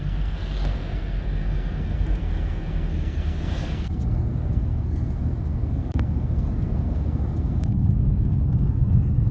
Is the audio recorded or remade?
remade